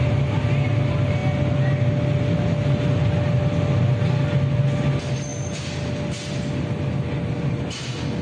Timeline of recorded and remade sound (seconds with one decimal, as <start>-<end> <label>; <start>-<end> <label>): 0.0-8.2 recorded